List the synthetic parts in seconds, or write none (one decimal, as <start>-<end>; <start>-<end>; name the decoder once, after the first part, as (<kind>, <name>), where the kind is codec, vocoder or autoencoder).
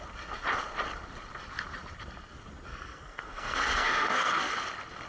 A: 2.7-4.5 (codec, SNAC)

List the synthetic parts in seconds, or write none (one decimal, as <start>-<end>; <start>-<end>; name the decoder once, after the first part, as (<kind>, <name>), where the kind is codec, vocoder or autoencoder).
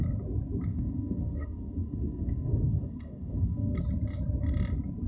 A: 0.7-3.8 (codec, SNAC)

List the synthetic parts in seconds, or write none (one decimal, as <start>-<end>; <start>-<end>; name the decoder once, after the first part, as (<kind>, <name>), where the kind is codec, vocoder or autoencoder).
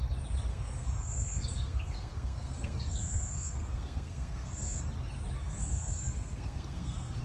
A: 0.5-4.8 (codec, SNAC); 5.4-7.2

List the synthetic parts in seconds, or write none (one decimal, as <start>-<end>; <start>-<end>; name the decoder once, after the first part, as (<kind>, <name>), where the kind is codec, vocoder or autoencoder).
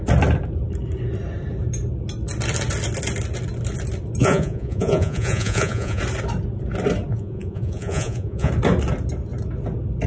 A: 4.2-6.0 (vocoder, Vocos); 7.1-8.5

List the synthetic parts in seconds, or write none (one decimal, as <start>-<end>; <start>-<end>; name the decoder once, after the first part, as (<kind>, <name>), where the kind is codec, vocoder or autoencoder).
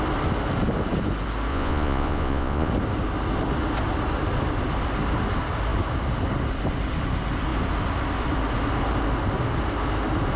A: 1.5-2.7 (vocoder, Vocos)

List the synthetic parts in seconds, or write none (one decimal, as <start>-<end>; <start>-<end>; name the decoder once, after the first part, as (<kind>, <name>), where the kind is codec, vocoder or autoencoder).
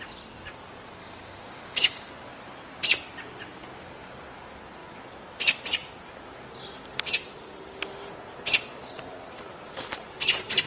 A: 1.0-2.1 (codec, DAC)